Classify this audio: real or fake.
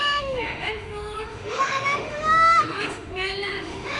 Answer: fake